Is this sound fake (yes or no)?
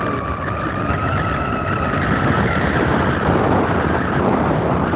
no